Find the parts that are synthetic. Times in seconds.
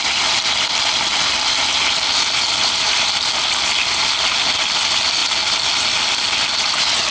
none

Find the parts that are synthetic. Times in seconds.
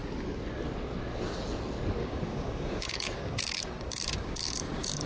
2.0-5.1 (codec, DAC)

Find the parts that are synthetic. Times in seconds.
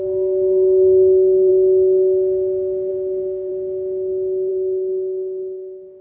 0.0-1.5 (codec, DAC); 2.9-3.5; 4.5-6.0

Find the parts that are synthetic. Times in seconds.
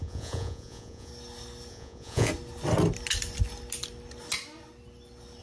0.0-1.1 (vocoder, Vocos); 1.7-2.3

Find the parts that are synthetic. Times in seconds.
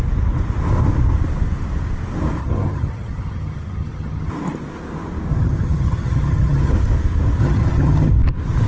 2.4-4.3 (vocoder, HiFi-GAN); 5.3-6.7; 7.4-8.1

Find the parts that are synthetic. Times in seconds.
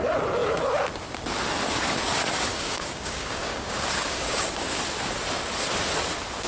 2.5-4.8 (codec, DAC)